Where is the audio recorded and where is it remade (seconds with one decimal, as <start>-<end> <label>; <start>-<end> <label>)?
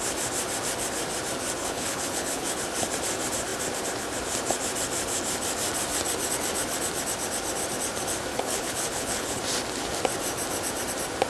0.0-1.6 recorded; 1.6-2.6 remade; 2.6-8.3 recorded; 8.3-9.4 remade; 9.4-11.3 recorded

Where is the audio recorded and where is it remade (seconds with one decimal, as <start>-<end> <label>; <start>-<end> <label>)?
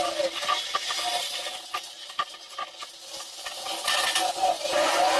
0.0-4.0 recorded; 4.0-5.2 remade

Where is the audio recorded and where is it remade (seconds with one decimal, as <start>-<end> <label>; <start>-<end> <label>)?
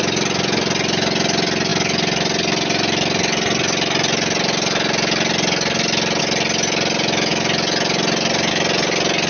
0.0-9.3 recorded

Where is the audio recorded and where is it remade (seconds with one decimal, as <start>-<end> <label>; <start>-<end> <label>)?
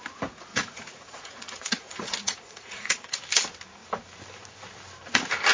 0.0-0.5 recorded; 0.5-3.2 remade; 3.2-5.5 recorded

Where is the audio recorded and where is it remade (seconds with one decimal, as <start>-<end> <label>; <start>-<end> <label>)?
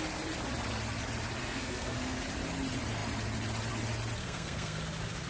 0.0-1.4 recorded; 1.4-2.2 remade; 2.2-4.2 recorded; 4.2-4.8 remade; 4.8-5.3 recorded